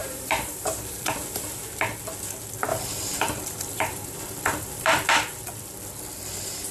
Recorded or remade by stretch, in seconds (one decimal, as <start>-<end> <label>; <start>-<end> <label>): 0.0-1.2 remade; 1.2-2.7 recorded; 2.7-5.1 remade; 5.1-6.7 recorded